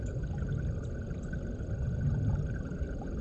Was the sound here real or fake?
real